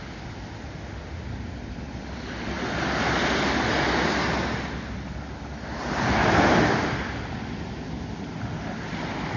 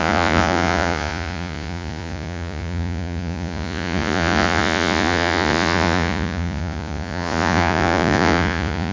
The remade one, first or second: second